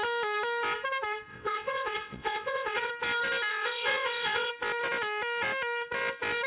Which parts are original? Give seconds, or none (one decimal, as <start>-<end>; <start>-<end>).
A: 0.0-1.3; 2.9-3.5; 4.5-6.5